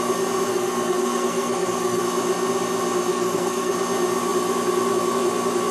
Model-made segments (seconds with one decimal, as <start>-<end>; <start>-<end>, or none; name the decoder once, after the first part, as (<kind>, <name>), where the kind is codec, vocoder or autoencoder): 0.5-2.0 (codec, SNAC); 3.1-3.7